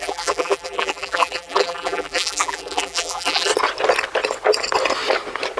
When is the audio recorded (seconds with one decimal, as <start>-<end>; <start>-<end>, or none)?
3.5-5.6